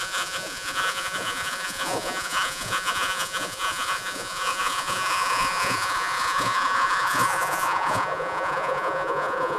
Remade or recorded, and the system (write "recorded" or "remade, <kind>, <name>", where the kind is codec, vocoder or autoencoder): remade, vocoder, Vocos